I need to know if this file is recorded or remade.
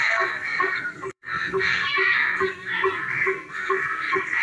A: remade